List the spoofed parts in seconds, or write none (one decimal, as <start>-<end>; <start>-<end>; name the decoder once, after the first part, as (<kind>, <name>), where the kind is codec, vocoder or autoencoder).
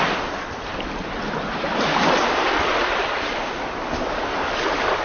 none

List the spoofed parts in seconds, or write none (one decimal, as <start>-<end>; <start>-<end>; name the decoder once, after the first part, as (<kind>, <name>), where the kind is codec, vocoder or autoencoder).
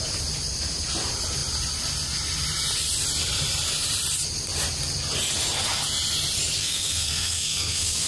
6.6-8.1 (codec, SNAC)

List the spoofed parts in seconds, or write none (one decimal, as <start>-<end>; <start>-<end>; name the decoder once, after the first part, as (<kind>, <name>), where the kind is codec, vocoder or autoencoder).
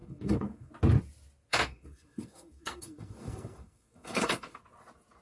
0.0-0.7 (codec, SNAC); 1.5-4.6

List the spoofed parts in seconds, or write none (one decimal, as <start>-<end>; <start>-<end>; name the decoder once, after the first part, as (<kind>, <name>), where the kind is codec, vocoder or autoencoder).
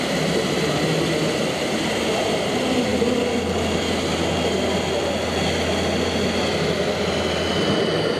none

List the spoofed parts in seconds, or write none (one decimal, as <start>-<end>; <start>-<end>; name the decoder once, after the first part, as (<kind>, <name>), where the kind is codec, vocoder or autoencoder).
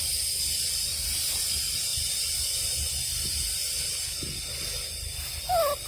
none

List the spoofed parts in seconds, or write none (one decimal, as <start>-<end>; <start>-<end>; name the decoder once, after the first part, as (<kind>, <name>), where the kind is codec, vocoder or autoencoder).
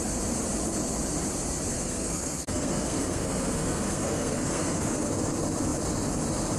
1.7-5.1 (codec, SNAC)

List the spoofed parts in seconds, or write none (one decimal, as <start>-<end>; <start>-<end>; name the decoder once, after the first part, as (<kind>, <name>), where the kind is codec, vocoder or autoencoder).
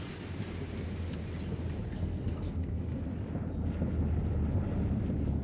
1.9-3.0 (codec, SNAC)